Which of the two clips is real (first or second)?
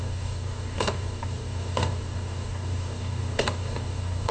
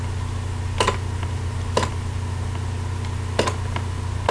second